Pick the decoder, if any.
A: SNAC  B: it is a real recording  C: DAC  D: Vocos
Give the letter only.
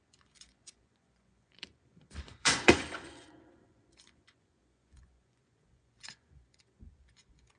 D